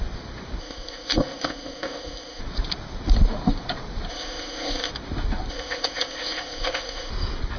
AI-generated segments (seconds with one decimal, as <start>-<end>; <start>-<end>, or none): 0.6-2.4; 4.1-4.9; 5.5-7.1